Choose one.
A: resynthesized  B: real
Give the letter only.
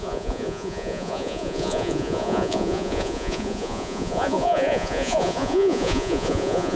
A